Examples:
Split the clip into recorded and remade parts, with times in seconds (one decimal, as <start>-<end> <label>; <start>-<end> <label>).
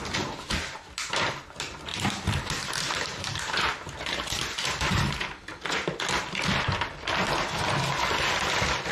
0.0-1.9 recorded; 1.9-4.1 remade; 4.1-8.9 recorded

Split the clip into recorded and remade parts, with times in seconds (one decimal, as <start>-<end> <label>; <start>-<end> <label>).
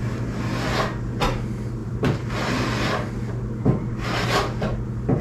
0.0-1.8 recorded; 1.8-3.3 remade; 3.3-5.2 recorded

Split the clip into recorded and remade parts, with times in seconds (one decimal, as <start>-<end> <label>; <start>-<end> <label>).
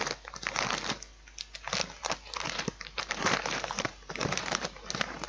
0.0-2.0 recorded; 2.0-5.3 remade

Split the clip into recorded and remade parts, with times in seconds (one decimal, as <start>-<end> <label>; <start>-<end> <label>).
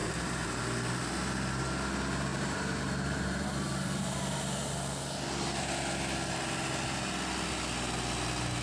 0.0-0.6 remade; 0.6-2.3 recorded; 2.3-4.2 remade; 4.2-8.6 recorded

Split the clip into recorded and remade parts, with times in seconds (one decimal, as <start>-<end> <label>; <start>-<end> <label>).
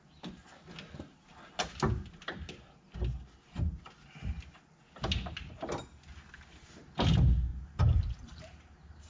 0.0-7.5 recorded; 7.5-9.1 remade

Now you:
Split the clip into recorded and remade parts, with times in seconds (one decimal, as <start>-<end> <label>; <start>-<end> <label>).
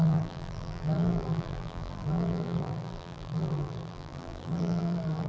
0.0-5.3 remade